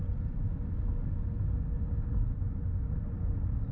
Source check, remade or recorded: recorded